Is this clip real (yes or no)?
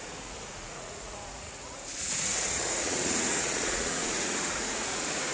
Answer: no